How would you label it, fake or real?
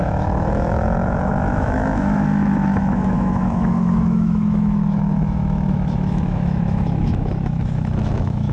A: fake